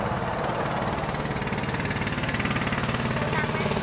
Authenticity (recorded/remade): recorded